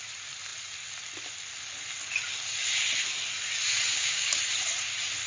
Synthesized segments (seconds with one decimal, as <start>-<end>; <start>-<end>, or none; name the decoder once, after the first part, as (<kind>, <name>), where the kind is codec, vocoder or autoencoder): 3.9-4.4 (codec, DAC)